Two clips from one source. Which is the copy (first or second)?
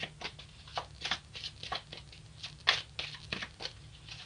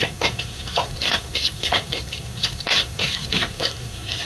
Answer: second